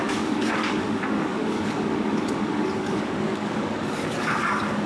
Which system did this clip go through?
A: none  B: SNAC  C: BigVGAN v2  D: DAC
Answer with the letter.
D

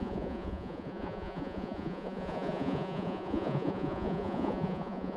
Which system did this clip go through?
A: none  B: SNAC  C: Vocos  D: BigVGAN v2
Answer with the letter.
C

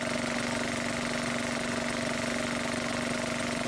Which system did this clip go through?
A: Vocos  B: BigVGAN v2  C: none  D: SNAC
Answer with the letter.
C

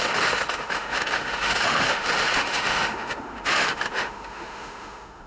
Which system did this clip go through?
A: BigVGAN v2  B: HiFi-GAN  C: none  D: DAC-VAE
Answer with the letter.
D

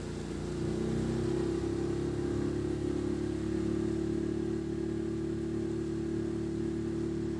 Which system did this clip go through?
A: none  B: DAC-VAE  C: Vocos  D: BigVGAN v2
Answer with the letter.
A